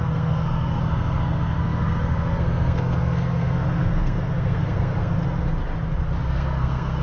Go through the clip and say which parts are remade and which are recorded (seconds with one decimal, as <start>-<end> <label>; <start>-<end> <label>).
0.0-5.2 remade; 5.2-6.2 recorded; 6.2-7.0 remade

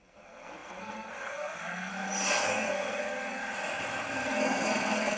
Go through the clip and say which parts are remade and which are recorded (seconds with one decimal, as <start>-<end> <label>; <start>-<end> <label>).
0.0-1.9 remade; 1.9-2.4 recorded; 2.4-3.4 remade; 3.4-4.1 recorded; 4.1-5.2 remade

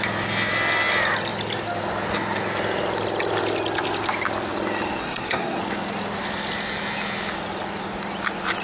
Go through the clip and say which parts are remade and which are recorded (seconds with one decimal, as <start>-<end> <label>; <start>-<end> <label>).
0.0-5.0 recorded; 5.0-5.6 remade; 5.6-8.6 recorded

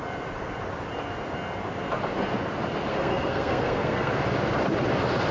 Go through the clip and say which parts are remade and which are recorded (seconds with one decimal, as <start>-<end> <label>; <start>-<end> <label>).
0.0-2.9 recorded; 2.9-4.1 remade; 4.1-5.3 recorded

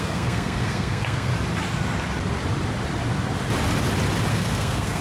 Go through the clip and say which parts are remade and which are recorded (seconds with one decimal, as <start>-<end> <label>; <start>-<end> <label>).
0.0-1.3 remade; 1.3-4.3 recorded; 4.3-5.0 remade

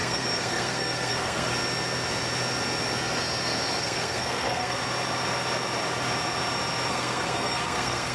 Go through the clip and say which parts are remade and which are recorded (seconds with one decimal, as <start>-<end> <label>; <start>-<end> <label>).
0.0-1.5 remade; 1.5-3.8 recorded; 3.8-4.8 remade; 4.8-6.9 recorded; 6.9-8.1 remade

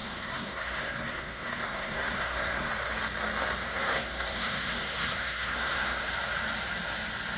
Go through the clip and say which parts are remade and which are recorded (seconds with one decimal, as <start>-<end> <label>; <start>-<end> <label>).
0.0-2.7 remade; 2.7-3.6 recorded; 3.6-6.1 remade; 6.1-7.4 recorded

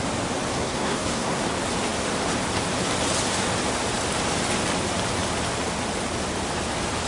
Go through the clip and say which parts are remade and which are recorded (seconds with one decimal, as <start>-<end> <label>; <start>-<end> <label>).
0.0-0.5 recorded; 0.5-1.4 remade; 1.4-7.1 recorded